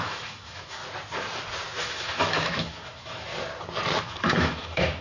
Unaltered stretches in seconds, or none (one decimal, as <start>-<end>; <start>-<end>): 0.8-1.8; 3.3-4.0